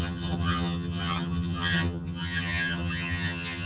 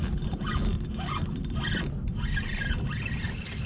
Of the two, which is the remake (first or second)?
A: first